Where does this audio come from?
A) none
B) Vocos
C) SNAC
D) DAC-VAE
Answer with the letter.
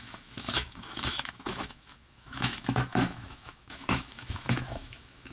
D